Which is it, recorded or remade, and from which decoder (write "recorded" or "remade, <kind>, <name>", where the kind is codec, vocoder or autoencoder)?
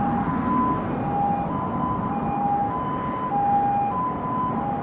recorded